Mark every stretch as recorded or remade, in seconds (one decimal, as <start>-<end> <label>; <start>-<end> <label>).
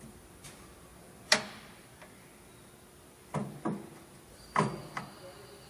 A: 0.0-5.7 recorded